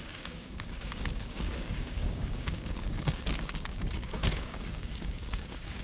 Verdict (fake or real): fake